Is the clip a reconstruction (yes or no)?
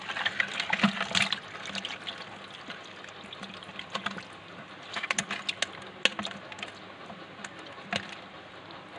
no